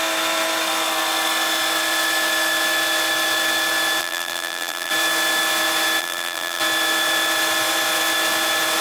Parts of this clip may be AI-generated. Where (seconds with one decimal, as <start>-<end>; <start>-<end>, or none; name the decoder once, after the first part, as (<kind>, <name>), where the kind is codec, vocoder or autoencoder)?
4.0-4.9 (vocoder, BigVGAN v2); 6.0-6.6